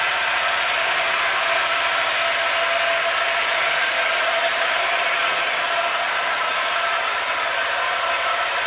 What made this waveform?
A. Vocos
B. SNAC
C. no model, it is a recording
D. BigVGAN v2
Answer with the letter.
C